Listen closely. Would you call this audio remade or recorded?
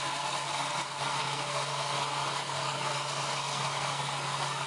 remade